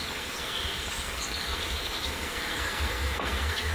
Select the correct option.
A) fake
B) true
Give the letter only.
A